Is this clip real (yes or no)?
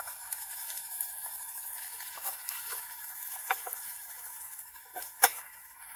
no